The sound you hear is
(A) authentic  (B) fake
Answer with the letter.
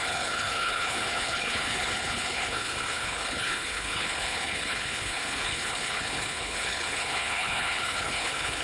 B